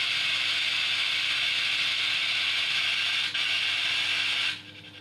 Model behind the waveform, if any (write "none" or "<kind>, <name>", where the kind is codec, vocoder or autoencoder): none